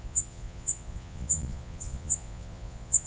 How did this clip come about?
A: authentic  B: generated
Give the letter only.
B